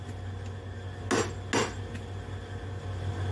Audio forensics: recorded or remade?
recorded